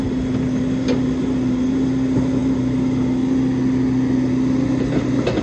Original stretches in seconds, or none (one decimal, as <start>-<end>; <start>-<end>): 0.0-5.4